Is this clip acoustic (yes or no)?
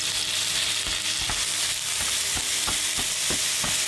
yes